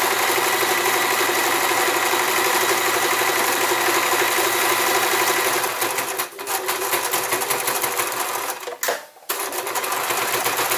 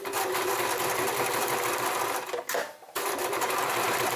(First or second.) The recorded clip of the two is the first